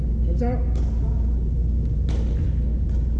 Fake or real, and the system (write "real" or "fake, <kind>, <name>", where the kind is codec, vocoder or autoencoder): real